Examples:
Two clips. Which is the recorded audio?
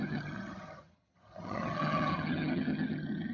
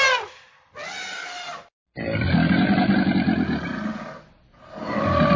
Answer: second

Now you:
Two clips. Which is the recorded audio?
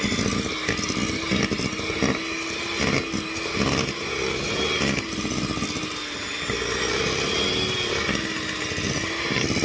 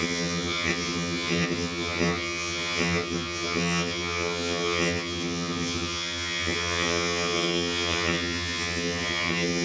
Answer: first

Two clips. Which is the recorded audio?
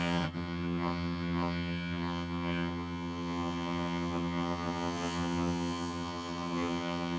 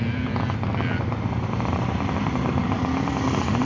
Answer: second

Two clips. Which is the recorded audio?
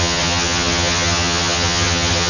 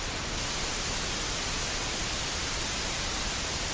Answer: second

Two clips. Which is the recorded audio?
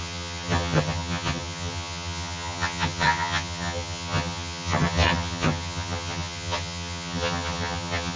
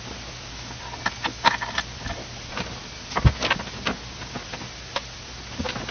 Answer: second